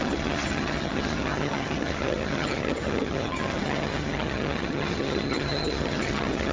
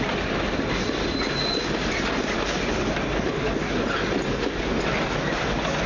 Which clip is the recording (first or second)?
second